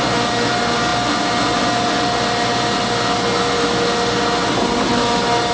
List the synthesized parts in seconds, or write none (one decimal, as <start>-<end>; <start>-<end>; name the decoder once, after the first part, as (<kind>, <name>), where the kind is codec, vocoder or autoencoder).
none